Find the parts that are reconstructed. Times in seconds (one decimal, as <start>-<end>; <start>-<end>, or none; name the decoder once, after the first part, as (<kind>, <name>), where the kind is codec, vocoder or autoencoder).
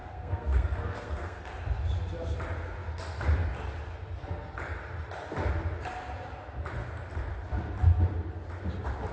0.0-1.5 (codec, SNAC)